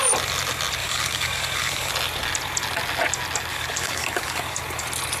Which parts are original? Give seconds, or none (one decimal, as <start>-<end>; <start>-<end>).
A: 0.0-0.8; 1.9-3.5; 4.6-5.2